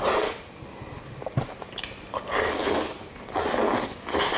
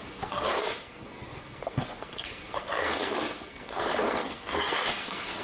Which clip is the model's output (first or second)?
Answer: second